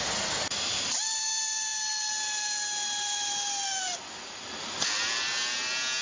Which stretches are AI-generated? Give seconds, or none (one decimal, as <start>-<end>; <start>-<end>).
none